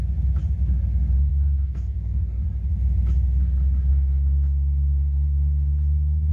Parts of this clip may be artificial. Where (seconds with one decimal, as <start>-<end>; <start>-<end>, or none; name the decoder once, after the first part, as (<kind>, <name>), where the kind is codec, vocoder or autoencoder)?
1.3-2.4 (codec, SNAC); 3.9-6.3